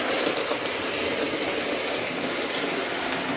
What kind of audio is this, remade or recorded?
recorded